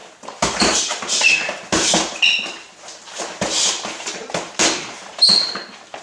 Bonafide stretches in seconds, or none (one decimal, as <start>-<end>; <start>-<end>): 0.0-6.0